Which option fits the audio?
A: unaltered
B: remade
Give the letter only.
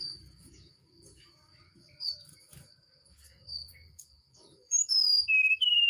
B